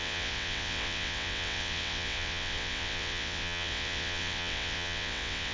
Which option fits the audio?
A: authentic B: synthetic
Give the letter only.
B